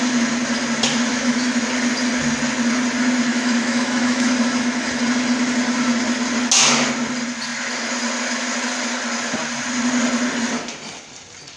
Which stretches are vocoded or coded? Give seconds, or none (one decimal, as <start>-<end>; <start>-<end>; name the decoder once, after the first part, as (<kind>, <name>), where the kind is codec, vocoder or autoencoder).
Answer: 1.1-1.6 (autoencoder, DAC-VAE); 3.3-4.3